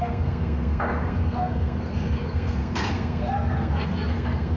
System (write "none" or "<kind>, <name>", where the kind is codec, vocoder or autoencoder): codec, SNAC